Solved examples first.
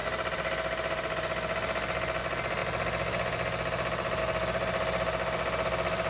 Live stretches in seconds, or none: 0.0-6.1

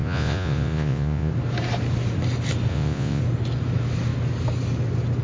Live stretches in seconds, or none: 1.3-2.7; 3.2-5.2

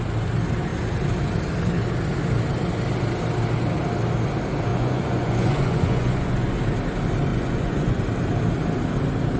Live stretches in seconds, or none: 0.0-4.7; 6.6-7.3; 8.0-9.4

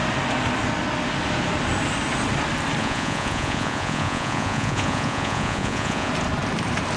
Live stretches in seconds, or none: 0.0-2.8; 6.1-7.0